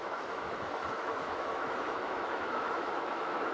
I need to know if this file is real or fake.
fake